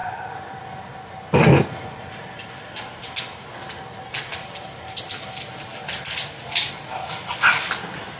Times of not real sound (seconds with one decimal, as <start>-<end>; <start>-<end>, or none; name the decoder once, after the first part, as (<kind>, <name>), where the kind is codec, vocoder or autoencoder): 0.0-0.6 (vocoder, BigVGAN v2)